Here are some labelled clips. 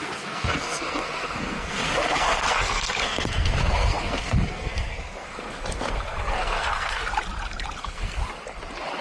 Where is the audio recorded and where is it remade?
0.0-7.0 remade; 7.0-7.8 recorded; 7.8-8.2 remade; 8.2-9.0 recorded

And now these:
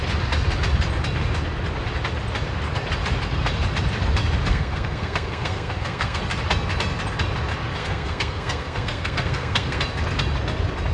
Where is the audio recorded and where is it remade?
0.0-4.5 recorded; 4.5-6.2 remade; 6.2-7.8 recorded; 7.8-9.8 remade; 9.8-10.9 recorded

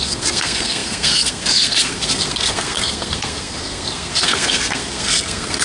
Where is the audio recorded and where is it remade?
0.0-5.6 remade

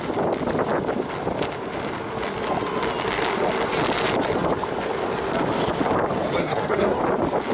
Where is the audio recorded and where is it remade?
0.0-6.4 recorded; 6.4-7.0 remade; 7.0-7.5 recorded